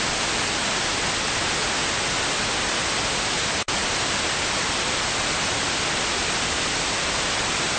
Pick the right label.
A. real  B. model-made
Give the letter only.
A